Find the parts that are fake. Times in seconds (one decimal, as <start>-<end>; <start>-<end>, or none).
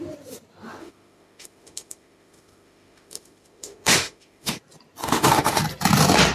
0.8-4.6; 5.0-5.6